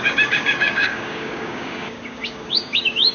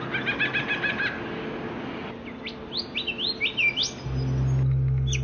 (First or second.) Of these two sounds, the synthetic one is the first